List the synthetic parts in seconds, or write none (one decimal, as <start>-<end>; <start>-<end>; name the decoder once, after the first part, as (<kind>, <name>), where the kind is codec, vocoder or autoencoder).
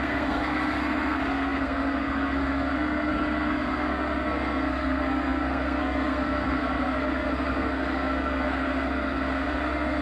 0.0-10.0 (codec, SNAC)